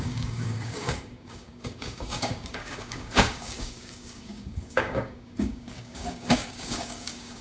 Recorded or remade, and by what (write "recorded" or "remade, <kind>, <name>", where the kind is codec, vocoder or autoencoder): remade, codec, DAC